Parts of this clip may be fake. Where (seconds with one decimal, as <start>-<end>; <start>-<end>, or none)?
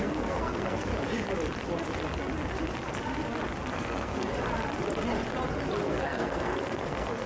0.0-0.9; 3.7-4.3; 5.8-7.3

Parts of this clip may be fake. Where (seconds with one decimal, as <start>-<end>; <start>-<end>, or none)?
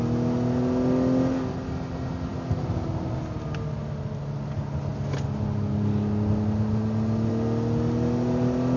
none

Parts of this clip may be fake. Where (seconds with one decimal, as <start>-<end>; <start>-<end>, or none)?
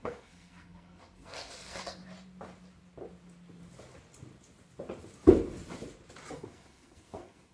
0.0-2.0; 6.3-7.5